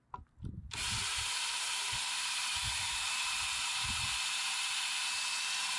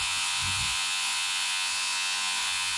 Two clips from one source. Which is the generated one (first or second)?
second